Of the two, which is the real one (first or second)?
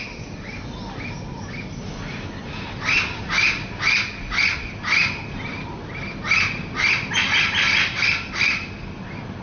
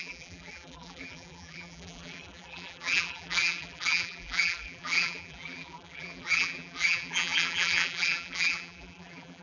first